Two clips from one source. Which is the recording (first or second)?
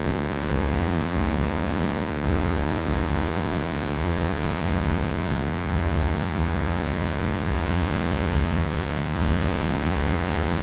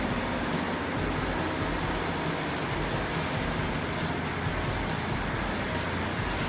second